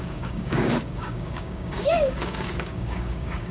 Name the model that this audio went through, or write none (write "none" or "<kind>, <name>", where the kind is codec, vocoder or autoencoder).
codec, DAC